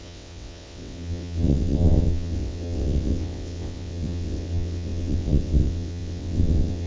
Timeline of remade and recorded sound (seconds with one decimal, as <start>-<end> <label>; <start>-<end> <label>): 0.0-6.9 remade